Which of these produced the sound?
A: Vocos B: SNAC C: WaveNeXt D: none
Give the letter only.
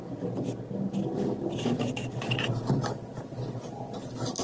D